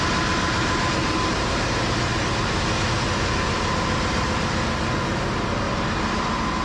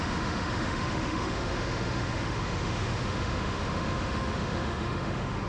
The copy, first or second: second